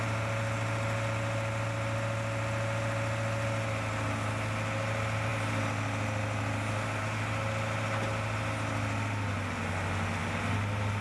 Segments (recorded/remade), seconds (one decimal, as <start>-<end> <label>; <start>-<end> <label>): 0.0-11.0 recorded